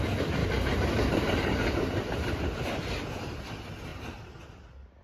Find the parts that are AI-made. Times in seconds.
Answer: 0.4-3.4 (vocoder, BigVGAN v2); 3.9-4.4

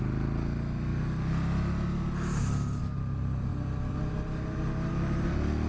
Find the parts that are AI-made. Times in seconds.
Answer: none

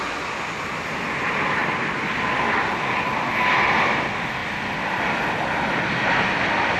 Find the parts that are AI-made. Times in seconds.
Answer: 4.4-5.0 (vocoder, BigVGAN v2)

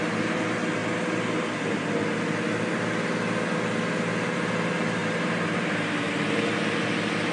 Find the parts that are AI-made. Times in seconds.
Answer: 5.0-6.1 (vocoder, BigVGAN v2)

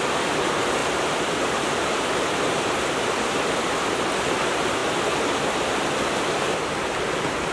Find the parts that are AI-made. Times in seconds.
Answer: 0.8-4.3 (vocoder, BigVGAN v2)

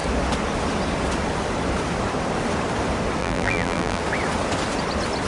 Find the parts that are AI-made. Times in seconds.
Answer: 3.2-4.0 (vocoder, BigVGAN v2)

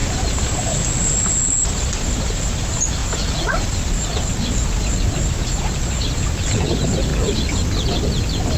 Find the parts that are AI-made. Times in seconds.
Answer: 0.0-3.0 (vocoder, BigVGAN v2); 3.8-7.1